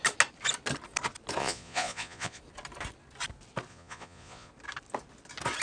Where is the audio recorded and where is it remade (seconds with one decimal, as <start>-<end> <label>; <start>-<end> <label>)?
0.0-1.4 recorded; 1.4-2.4 remade; 2.4-3.7 recorded; 3.7-4.5 remade; 4.5-5.6 recorded